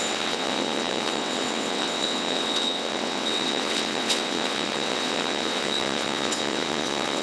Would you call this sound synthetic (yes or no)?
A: yes